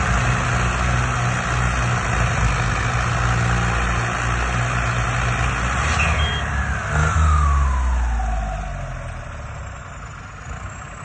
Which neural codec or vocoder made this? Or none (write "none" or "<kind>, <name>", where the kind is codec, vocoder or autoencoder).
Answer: none